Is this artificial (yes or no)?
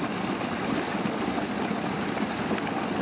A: no